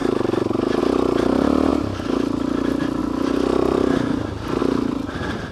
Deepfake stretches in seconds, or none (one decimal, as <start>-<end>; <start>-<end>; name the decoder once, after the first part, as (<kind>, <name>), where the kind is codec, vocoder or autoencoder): none